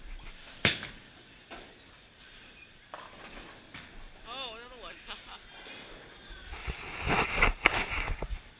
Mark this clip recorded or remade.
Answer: recorded